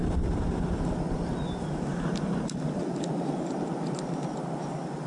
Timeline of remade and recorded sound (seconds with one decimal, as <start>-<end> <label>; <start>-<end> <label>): 0.0-5.1 recorded